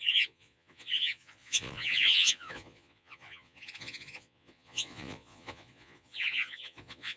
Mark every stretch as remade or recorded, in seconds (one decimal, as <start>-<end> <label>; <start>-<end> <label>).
0.0-7.2 remade